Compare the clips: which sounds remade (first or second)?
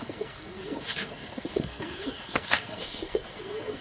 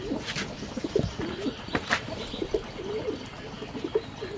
first